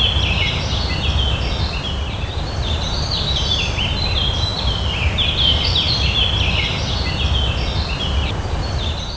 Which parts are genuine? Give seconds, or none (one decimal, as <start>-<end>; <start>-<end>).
0.0-4.5; 6.9-9.2

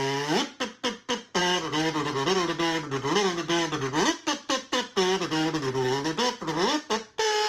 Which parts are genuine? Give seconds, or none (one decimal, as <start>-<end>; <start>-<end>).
0.0-7.5

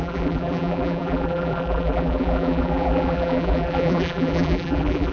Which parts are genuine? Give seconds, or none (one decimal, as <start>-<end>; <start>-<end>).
none

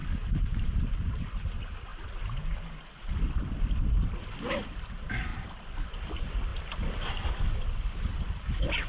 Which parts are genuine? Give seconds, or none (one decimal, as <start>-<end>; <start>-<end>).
1.9-2.7; 5.3-5.9

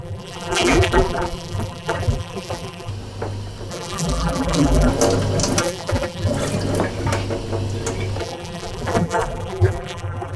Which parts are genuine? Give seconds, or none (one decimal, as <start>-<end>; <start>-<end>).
2.9-3.7; 4.9-5.6; 6.3-8.2

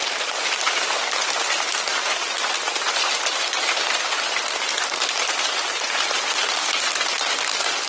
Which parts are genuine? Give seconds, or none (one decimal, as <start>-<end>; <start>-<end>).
1.4-2.9; 5.7-7.9

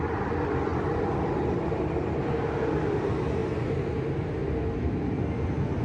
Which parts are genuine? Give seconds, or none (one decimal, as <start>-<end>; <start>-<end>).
0.0-3.4; 3.9-5.8

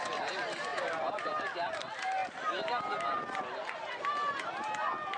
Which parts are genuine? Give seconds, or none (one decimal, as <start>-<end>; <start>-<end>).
0.0-0.7; 1.3-5.2